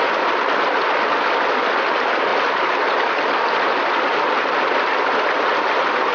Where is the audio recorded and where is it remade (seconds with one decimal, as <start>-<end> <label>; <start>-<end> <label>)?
0.0-6.1 recorded